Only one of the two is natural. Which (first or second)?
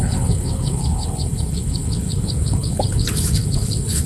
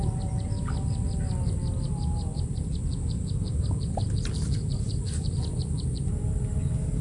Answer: second